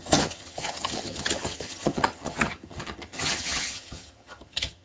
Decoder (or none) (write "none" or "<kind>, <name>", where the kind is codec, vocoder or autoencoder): vocoder, HiFi-GAN